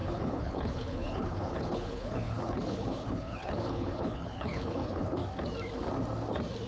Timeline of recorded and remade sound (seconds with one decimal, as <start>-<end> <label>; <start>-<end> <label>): 0.0-5.2 remade; 5.2-6.7 recorded